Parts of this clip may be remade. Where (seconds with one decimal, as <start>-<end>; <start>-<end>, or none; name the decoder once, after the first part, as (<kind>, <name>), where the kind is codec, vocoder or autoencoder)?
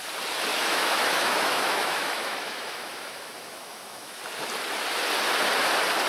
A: 0.5-4.2 (autoencoder, DAC-VAE)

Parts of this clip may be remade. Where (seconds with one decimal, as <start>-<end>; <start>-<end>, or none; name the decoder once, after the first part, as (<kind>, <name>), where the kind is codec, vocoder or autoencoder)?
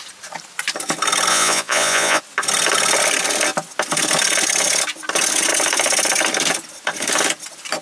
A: 1.3-2.2 (vocoder, Vocos)